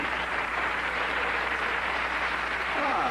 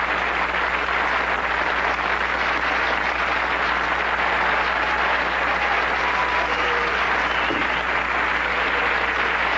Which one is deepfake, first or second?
first